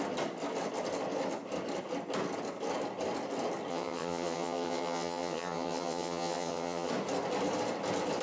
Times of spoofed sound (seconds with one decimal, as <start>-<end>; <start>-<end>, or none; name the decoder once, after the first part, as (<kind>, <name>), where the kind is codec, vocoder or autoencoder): 3.7-6.9 (vocoder, HiFi-GAN)